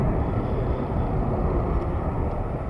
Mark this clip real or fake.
real